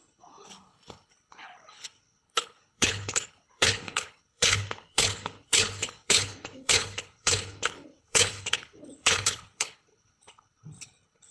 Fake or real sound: fake